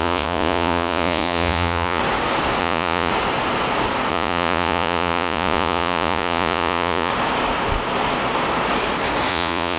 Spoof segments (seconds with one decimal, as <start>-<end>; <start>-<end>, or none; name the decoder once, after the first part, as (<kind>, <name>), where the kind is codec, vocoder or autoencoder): 0.0-2.0 (vocoder, Vocos); 2.6-3.1; 4.1-7.1; 9.3-9.8